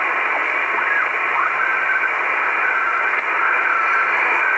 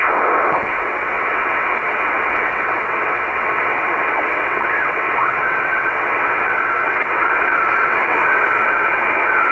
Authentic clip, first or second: first